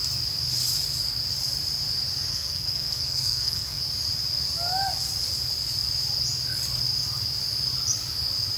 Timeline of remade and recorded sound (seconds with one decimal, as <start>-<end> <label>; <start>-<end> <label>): 0.0-2.3 recorded; 2.3-3.8 remade; 3.8-8.6 recorded